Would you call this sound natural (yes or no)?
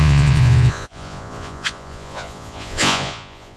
no